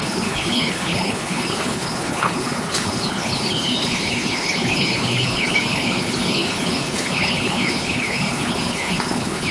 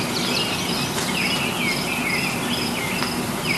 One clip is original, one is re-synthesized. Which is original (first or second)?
second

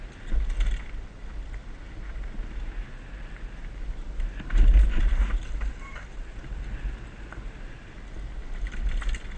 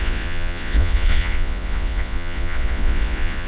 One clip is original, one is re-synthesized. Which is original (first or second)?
first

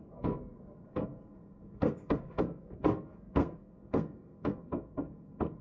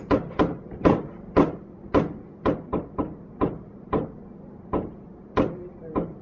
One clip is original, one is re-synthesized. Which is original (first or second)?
second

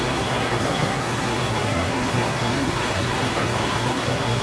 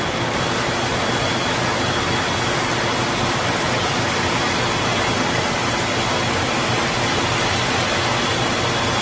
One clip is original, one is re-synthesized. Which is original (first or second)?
second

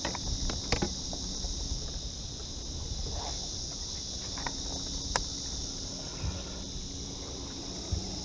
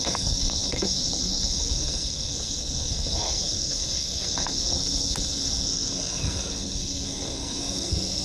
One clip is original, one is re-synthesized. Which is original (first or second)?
first